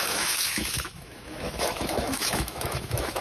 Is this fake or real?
fake